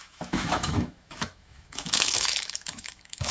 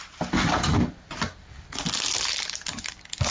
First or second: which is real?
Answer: second